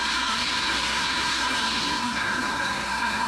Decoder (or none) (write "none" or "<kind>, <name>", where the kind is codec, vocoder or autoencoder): codec, SNAC